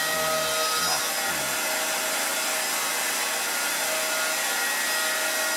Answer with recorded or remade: recorded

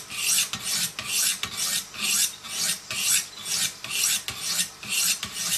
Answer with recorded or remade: recorded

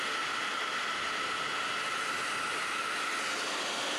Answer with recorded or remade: recorded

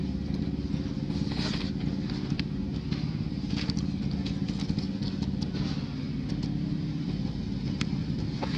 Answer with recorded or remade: recorded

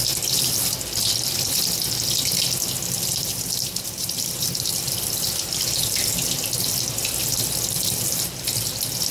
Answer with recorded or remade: recorded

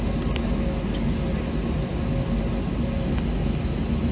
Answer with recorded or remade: recorded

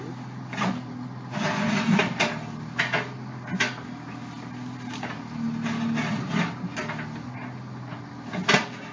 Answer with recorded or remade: recorded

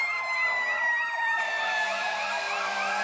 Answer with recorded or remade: remade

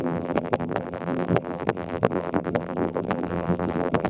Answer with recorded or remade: remade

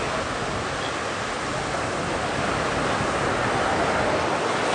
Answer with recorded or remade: recorded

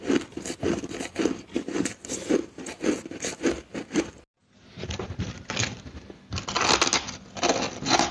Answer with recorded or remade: recorded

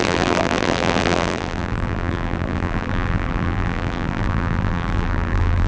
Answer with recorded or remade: remade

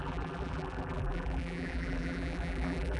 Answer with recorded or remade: remade